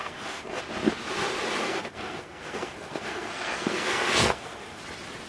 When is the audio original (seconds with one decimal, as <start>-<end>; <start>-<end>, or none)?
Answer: 0.6-1.6; 4.8-5.3